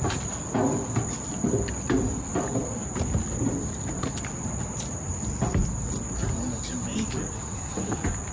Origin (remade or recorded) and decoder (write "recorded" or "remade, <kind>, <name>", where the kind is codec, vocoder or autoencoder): recorded